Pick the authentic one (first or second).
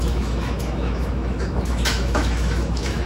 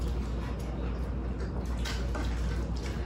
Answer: second